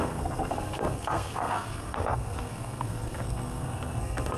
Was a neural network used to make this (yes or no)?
yes